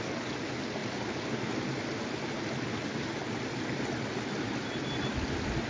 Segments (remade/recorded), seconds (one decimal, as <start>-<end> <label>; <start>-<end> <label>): 0.0-5.7 recorded

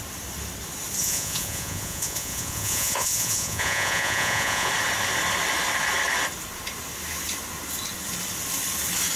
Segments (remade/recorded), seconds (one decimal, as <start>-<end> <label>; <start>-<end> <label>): 0.0-1.0 recorded; 1.0-4.7 remade; 4.7-9.2 recorded

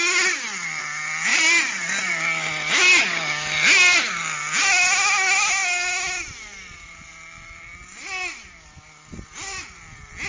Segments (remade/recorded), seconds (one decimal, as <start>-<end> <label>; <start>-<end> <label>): 0.0-1.3 recorded; 1.3-2.1 remade; 2.1-10.3 recorded